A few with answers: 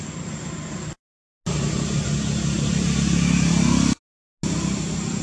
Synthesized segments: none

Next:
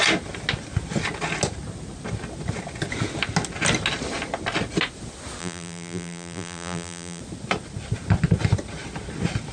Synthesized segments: 5.4-7.2 (vocoder, BigVGAN v2)

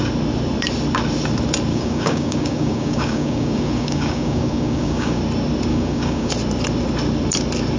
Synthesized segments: 1.7-5.2 (codec, DAC); 5.7-6.3

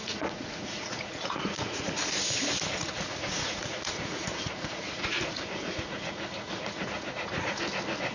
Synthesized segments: 0.0-2.0 (vocoder, Vocos); 2.7-7.6

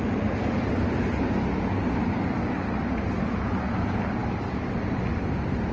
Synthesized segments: none

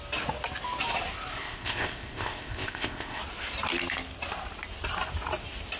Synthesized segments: 1.3-3.2 (codec, ZipCodec)

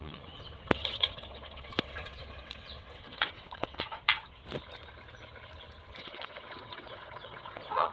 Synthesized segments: 0.0-4.4 (vocoder, WaveNeXt); 5.8-7.9

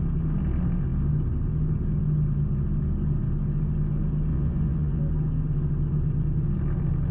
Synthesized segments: 4.3-5.0 (vocoder, Vocos)